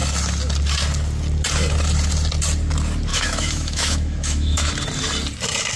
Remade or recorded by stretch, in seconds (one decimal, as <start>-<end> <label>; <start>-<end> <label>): 0.0-3.1 recorded; 3.1-4.7 remade; 4.7-5.8 recorded